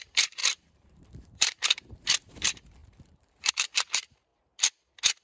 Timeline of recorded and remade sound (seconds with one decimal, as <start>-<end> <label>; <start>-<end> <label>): 0.0-4.3 remade; 4.3-5.2 recorded